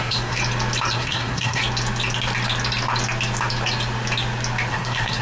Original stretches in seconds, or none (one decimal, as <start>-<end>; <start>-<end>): 0.4-0.9; 1.6-4.7

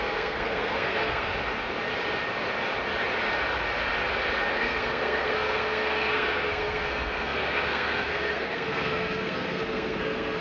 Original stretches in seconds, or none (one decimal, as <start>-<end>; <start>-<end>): 1.3-4.5

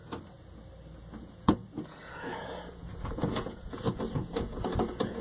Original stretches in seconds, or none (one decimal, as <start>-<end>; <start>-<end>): 0.0-1.2

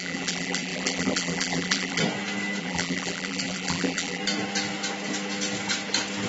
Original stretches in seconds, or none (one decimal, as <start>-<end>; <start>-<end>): 2.0-2.6; 4.2-6.3